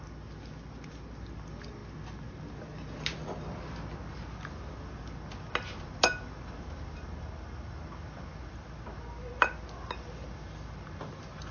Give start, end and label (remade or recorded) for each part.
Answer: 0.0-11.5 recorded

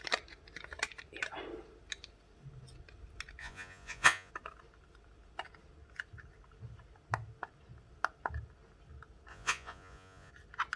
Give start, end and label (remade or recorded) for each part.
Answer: 0.0-3.4 recorded; 3.4-4.3 remade; 4.3-9.3 recorded; 9.3-10.3 remade; 10.3-10.8 recorded

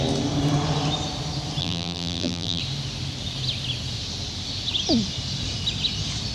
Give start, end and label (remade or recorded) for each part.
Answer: 0.0-1.6 recorded; 1.6-2.6 remade; 2.6-6.3 recorded

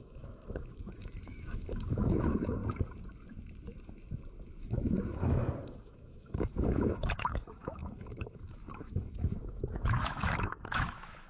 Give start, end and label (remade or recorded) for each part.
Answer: 0.0-2.6 remade; 2.6-4.6 recorded; 4.6-11.3 remade

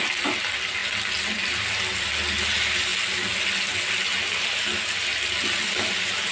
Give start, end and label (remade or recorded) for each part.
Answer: 0.0-6.3 recorded

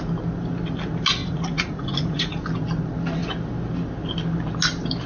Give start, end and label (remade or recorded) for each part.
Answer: 0.0-1.2 recorded; 1.2-2.4 remade; 2.4-5.1 recorded

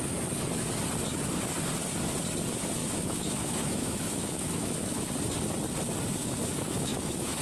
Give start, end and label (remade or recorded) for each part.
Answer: 0.0-2.8 recorded; 2.8-5.1 remade; 5.1-6.2 recorded; 6.2-7.4 remade

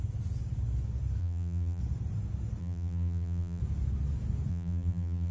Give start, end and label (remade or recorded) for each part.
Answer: 0.0-1.2 recorded; 1.2-1.8 remade; 1.8-2.6 recorded; 2.6-3.6 remade; 3.6-4.5 recorded; 4.5-5.3 remade